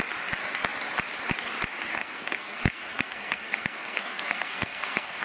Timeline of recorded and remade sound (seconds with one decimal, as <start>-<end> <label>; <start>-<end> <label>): 0.0-2.0 recorded; 2.0-5.2 remade